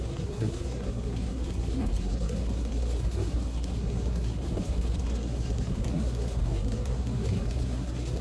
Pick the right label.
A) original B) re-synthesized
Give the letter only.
B